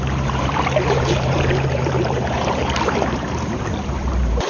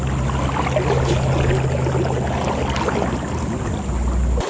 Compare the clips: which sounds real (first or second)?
second